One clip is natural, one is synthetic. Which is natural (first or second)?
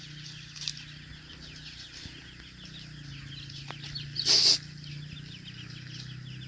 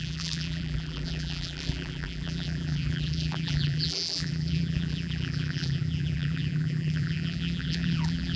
first